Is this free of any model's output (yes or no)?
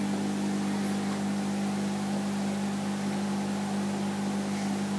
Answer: yes